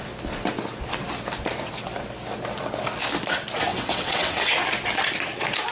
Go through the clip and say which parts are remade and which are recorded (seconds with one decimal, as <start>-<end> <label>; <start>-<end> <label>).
0.0-3.7 recorded; 3.7-4.5 remade; 4.5-5.7 recorded